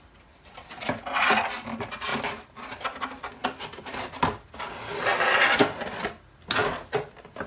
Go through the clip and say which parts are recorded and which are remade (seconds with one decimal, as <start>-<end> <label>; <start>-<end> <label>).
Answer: 0.0-7.5 recorded